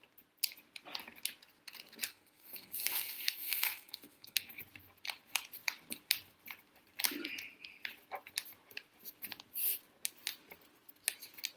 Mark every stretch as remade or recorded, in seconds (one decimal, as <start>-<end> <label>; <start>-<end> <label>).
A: 0.0-2.1 recorded; 2.1-4.6 remade; 4.6-11.6 recorded